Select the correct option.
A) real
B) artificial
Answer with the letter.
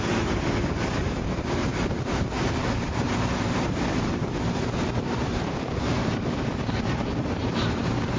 B